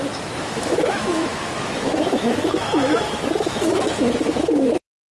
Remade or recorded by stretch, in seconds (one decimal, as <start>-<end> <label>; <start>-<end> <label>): 0.0-5.1 remade